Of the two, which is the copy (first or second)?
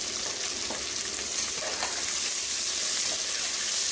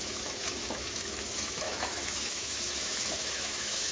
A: second